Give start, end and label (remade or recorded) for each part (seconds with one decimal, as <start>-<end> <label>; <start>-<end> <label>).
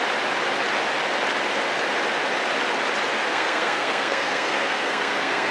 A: 0.0-3.3 recorded; 3.3-5.5 remade